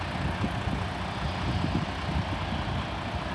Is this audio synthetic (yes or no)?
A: no